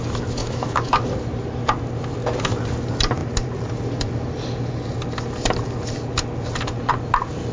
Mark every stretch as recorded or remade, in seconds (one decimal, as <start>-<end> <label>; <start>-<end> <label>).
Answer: 0.0-0.4 recorded; 0.4-0.9 remade; 0.9-7.5 recorded